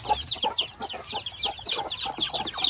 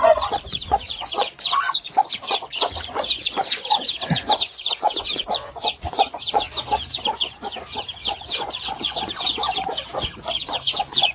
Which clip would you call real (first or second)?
first